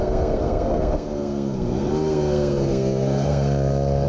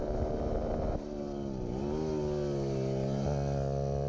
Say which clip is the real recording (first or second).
second